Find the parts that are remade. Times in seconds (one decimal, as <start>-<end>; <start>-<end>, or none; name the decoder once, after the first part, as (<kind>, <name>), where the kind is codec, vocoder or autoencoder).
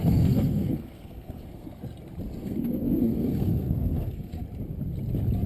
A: 0.0-1.8 (codec, SNAC); 2.4-4.4